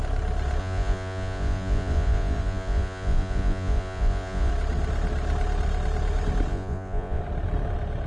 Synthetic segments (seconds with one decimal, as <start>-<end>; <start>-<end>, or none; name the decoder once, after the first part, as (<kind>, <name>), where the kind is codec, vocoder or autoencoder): 0.6-4.5 (vocoder, Vocos); 6.5-7.2